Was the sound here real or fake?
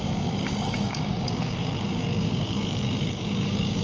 fake